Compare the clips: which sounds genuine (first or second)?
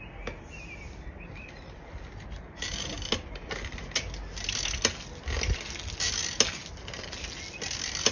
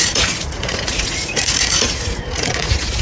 first